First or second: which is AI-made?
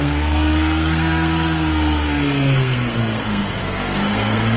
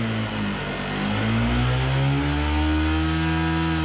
first